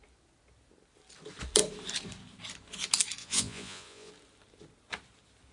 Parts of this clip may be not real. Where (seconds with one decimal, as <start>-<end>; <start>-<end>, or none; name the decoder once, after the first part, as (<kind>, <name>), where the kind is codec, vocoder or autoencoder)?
3.2-4.1 (vocoder, Vocos)